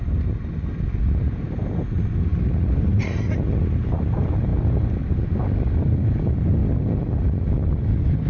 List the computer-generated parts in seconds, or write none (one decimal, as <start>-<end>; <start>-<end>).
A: none